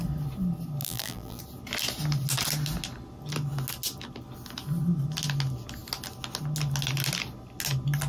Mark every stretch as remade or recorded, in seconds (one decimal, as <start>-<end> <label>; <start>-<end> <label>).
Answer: 0.0-0.8 recorded; 0.8-1.4 remade; 1.4-8.1 recorded